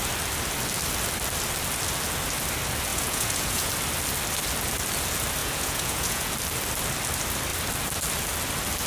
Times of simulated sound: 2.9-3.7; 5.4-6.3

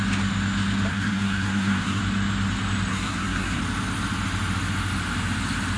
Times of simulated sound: 0.9-2.0; 2.9-3.6